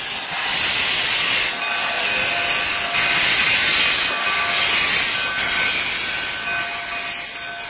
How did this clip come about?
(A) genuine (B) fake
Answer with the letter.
A